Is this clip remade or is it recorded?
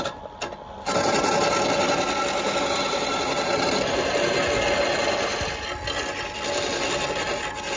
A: recorded